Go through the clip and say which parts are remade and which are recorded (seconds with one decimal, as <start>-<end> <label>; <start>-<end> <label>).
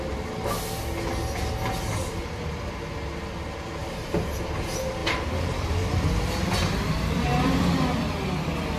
0.0-3.8 recorded; 3.8-4.5 remade; 4.5-5.0 recorded; 5.0-7.6 remade; 7.6-8.8 recorded